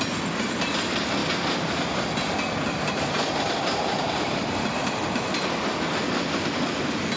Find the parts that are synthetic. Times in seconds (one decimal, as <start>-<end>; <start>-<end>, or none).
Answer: none